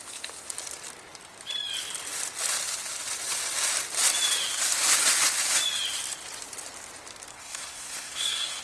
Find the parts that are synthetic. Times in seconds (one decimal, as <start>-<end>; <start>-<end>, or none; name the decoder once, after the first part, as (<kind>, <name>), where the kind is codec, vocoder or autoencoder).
7.3-8.6 (codec, SNAC)